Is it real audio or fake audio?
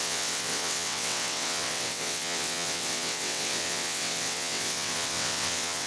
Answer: fake